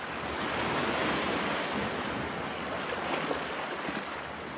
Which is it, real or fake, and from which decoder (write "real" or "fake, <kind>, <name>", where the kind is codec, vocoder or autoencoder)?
real